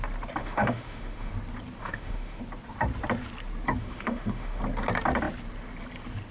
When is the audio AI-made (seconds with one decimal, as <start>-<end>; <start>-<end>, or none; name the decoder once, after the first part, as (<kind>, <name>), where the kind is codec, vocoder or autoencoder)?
0.4-1.3 (autoencoder, DAC-VAE); 1.8-2.4; 3.8-4.6